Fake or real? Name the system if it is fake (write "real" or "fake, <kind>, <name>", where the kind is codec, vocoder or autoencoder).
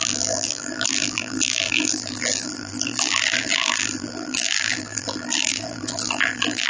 fake, vocoder, BigVGAN v2